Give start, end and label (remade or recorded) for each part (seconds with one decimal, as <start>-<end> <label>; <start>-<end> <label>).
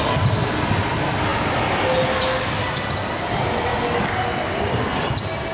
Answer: 0.0-5.5 recorded